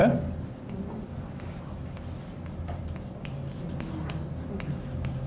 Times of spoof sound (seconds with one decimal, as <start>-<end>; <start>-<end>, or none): none